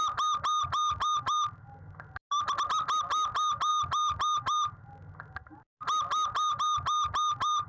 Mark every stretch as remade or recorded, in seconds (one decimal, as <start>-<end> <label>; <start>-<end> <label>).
0.0-7.7 recorded